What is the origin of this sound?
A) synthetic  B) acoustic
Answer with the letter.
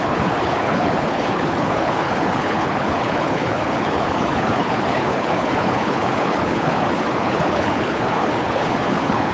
A